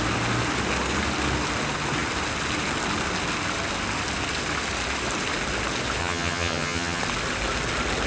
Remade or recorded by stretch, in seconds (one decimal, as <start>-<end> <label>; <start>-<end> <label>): 0.0-6.0 recorded; 6.0-7.0 remade; 7.0-8.1 recorded